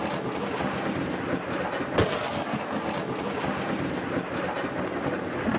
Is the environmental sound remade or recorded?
recorded